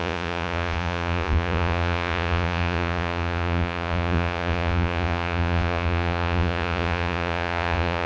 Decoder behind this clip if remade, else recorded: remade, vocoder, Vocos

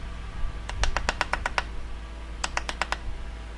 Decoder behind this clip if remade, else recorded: recorded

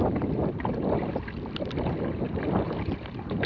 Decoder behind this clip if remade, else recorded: recorded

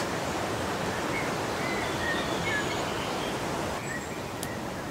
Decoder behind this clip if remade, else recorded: recorded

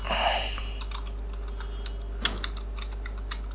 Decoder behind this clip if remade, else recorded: recorded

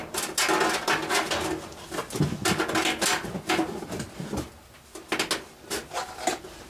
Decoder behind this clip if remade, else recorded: recorded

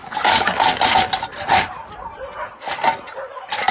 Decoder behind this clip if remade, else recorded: recorded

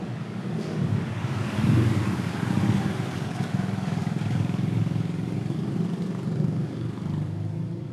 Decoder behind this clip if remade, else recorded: remade, codec, DAC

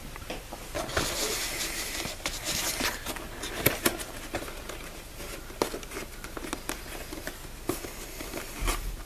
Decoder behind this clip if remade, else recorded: recorded